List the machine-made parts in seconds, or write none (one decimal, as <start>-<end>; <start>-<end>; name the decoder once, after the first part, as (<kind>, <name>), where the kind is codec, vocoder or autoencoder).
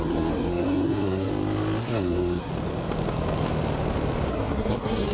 0.0-1.3 (codec, SNAC); 1.8-2.5; 4.3-5.1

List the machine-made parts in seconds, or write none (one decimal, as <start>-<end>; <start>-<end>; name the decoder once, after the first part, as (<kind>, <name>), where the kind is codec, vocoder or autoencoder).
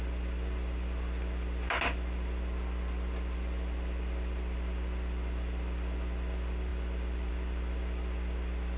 none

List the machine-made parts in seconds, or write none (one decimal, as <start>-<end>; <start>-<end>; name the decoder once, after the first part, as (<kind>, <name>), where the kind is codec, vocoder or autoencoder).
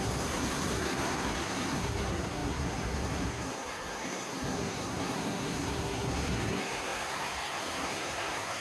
0.0-8.6 (codec, SNAC)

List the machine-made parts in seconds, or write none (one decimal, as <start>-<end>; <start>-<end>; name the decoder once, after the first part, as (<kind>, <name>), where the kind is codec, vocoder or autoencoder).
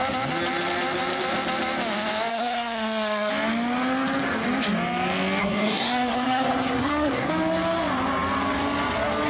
2.3-3.3 (codec, SNAC); 5.4-7.3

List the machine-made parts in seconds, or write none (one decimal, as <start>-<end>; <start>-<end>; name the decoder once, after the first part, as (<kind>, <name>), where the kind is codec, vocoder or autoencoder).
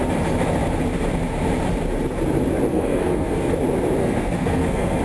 2.7-3.5 (codec, SNAC); 4.0-5.0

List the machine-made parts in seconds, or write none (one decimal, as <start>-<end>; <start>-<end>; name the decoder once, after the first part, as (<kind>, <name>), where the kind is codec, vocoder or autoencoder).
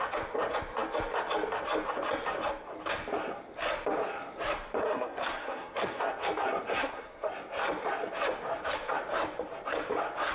4.8-6.0 (codec, SNAC); 6.7-7.3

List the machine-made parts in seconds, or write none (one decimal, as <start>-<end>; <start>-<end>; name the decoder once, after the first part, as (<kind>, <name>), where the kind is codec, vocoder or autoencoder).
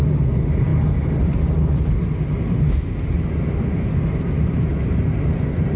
none